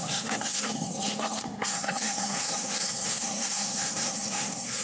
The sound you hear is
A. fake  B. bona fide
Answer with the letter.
A